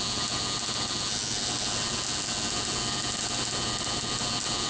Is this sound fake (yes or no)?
no